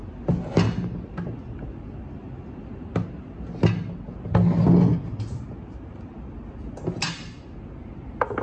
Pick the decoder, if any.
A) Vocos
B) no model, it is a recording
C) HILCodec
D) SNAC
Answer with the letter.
B